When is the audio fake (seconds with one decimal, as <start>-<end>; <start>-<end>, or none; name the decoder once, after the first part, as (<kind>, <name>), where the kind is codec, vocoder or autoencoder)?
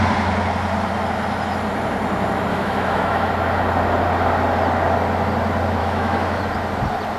2.5-3.3 (autoencoder, DAC-VAE); 5.8-6.4